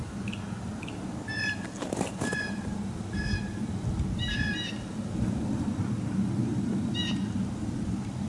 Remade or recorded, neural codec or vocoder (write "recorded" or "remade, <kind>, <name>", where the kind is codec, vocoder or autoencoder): recorded